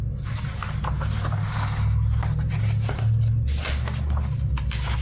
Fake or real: real